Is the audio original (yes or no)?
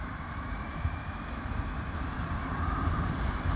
no